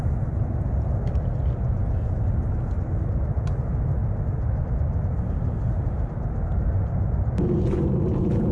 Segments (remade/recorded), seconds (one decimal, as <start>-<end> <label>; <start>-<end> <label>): 0.0-8.5 recorded